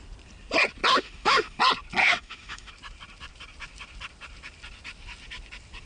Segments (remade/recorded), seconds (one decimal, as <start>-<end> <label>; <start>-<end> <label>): 0.0-0.9 recorded; 0.9-1.6 remade; 1.6-2.0 recorded; 2.0-2.7 remade; 2.7-5.9 recorded